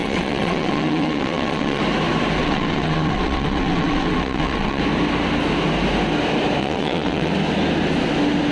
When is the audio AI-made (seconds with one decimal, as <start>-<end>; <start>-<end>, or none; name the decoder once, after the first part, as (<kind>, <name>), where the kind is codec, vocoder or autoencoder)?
0.0-1.8 (vocoder, WaveNeXt); 2.4-4.8; 6.6-7.3